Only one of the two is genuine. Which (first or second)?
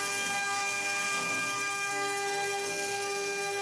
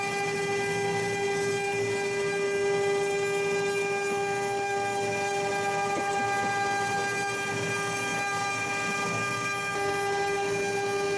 second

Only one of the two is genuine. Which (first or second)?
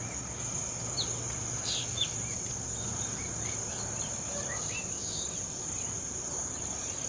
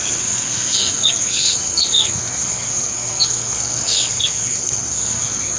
first